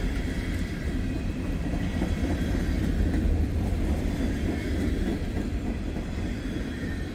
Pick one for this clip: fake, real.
fake